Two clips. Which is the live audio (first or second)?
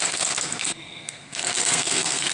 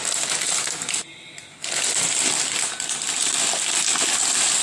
second